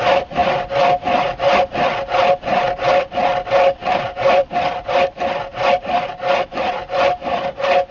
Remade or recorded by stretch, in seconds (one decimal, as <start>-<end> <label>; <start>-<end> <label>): 0.0-3.8 recorded; 3.8-4.8 remade; 4.8-5.5 recorded; 5.5-7.5 remade; 7.5-7.9 recorded